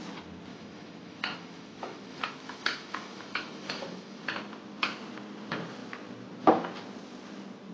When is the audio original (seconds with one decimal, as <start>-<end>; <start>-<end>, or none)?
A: 0.0-0.5; 4.2-7.7